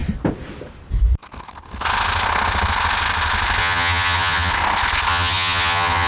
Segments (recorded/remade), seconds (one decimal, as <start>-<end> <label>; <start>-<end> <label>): 0.0-3.6 recorded; 3.6-4.5 remade; 4.5-5.1 recorded; 5.1-6.1 remade